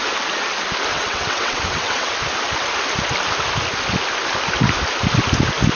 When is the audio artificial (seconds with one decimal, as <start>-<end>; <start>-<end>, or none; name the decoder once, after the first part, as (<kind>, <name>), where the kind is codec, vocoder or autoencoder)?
0.9-2.1 (vocoder, WaveNeXt)

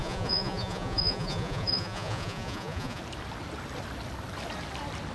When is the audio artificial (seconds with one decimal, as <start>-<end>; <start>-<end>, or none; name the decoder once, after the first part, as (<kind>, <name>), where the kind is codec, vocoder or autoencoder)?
0.0-3.0 (vocoder, Vocos)

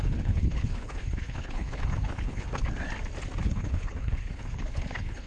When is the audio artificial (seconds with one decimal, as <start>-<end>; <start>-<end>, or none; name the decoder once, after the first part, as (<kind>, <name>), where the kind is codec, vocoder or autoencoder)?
0.0-2.6 (codec, HILCodec); 3.4-5.3

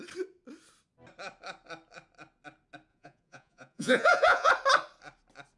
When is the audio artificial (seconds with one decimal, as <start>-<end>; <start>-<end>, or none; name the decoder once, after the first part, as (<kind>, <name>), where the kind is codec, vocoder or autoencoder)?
2.9-4.5 (vocoder, Vocos)

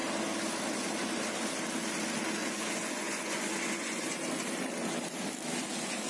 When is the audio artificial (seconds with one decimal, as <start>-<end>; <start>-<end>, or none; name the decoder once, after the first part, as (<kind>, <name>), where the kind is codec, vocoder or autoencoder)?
2.4-4.2 (vocoder, Vocos)